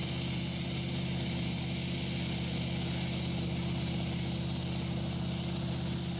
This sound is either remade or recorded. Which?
recorded